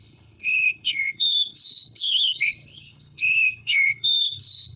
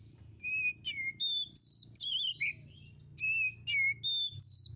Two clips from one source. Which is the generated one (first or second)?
first